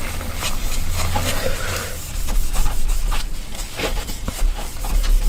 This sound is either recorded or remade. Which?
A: recorded